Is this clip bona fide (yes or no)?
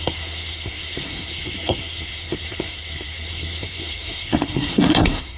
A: no